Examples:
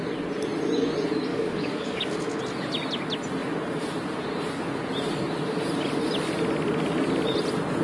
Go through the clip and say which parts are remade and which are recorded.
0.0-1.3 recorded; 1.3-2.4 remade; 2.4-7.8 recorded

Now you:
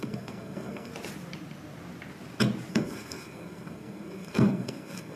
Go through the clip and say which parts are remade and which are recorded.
0.0-0.9 remade; 0.9-2.7 recorded; 2.7-5.2 remade

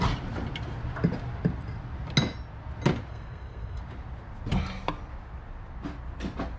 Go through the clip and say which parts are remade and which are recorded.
0.0-3.1 recorded; 3.1-3.8 remade; 3.8-6.6 recorded

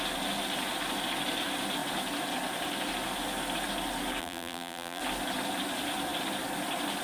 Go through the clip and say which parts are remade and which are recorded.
0.0-4.2 recorded; 4.2-5.0 remade; 5.0-7.0 recorded

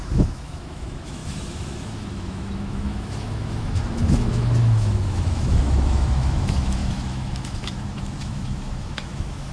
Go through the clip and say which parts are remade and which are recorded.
0.0-9.5 remade

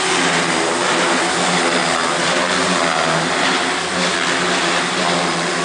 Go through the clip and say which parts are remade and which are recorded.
0.0-5.6 recorded

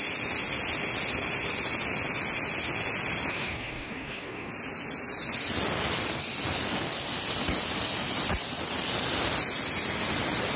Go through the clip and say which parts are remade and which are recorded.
0.0-3.3 recorded; 3.3-4.5 remade; 4.5-10.6 recorded

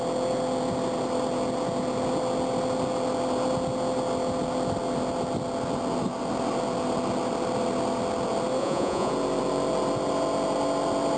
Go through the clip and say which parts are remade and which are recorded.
0.0-8.6 recorded; 8.6-9.1 remade; 9.1-11.2 recorded